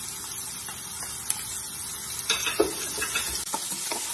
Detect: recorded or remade recorded